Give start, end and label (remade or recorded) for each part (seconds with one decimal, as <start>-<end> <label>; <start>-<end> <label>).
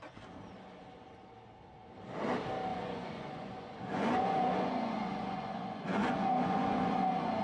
0.0-2.7 recorded; 2.7-7.4 remade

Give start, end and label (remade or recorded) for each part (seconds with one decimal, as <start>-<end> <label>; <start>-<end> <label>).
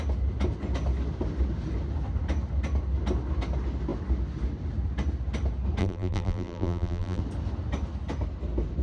0.0-5.8 recorded; 5.8-7.2 remade; 7.2-8.8 recorded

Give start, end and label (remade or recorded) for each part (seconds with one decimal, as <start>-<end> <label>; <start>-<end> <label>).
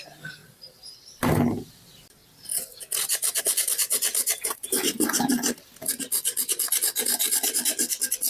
0.0-0.4 recorded; 0.4-1.6 remade; 1.6-4.2 recorded; 4.2-5.3 remade; 5.3-8.3 recorded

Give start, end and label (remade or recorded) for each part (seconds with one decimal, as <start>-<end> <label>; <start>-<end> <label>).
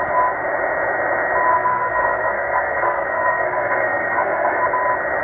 0.0-1.5 recorded; 1.5-4.6 remade; 4.6-5.2 recorded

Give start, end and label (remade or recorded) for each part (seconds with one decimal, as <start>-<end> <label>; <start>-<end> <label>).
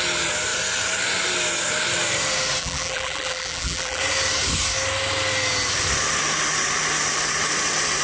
0.0-2.6 recorded; 2.6-4.0 remade; 4.0-8.0 recorded